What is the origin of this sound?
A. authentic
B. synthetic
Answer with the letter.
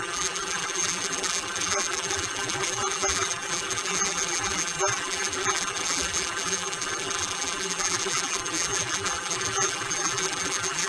B